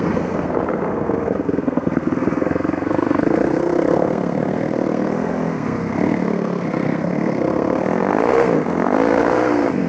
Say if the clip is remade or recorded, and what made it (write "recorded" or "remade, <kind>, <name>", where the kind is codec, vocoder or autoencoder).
remade, codec, SNAC